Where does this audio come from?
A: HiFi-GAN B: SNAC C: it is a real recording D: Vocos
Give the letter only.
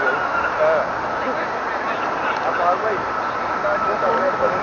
C